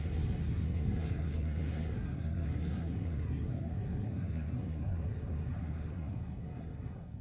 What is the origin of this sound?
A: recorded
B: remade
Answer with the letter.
B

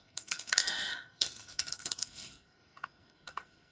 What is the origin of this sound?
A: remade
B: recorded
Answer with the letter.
A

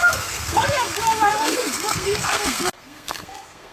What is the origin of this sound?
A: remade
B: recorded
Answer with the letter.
A